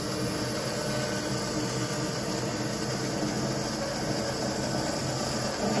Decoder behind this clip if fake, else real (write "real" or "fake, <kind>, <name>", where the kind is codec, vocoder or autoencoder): real